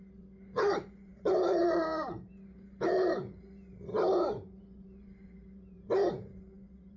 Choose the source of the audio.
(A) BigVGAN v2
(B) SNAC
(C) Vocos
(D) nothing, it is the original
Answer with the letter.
A